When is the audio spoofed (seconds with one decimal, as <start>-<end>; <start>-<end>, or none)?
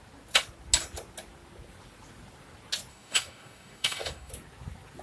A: 2.9-4.3